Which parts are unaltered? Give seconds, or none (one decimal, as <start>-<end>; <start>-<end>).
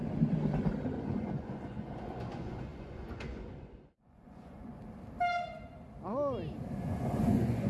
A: 0.0-1.0; 4.8-6.8